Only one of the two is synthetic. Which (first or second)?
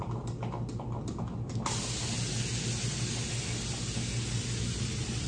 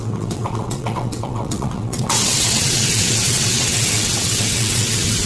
second